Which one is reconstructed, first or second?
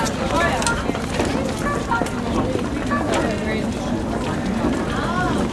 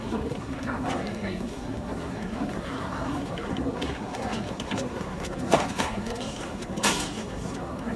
second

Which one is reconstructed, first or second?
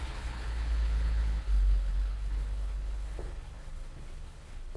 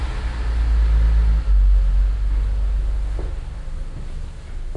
first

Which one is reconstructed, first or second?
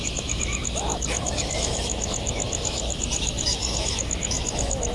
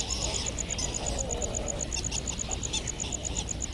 first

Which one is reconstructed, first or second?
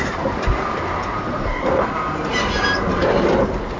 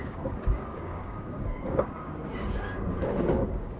second